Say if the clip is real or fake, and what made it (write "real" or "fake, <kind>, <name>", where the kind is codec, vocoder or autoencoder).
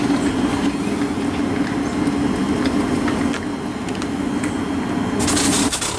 real